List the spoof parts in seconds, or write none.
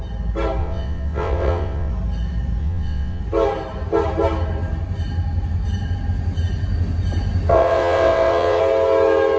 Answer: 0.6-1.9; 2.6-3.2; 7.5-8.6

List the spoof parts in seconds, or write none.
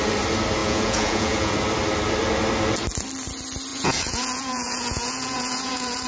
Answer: 0.6-1.5; 3.7-6.1